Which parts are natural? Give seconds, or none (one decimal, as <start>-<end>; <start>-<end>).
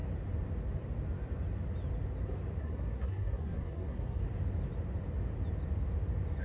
0.0-2.6; 4.2-6.4